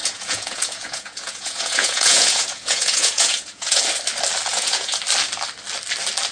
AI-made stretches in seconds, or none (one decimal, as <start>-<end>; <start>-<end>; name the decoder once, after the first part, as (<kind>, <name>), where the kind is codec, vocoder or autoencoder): 0.0-3.8 (vocoder, Vocos); 4.5-5.0